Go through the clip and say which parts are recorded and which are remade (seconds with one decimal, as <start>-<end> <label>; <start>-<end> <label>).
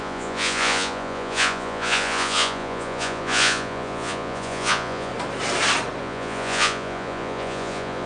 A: 0.0-5.1 remade; 5.1-6.0 recorded; 6.0-8.1 remade